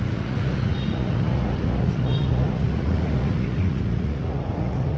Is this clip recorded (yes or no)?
no